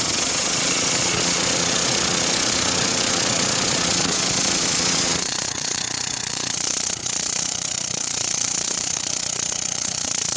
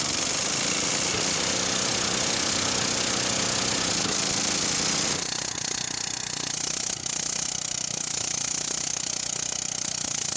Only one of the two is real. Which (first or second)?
second